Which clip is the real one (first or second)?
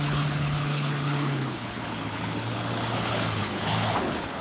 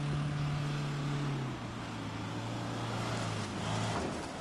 second